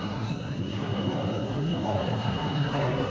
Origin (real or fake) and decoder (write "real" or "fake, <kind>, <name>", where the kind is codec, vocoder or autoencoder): fake, codec, SNAC